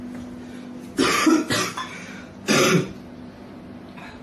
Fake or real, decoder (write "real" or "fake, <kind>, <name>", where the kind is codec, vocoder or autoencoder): real